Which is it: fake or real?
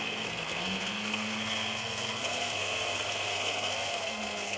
fake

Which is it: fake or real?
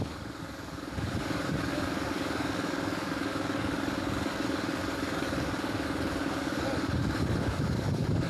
fake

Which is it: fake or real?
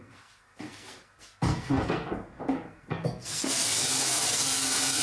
fake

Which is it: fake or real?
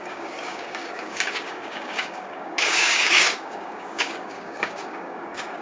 fake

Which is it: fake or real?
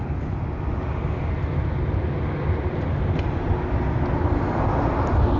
real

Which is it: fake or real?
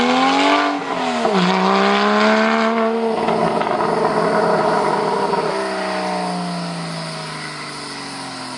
real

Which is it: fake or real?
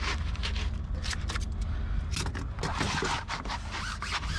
real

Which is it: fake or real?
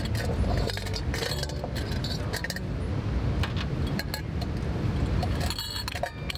real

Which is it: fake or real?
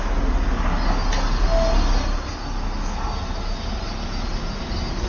real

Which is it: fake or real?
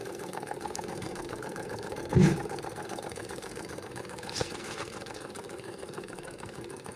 fake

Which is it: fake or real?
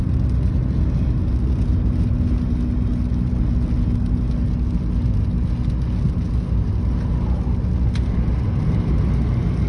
real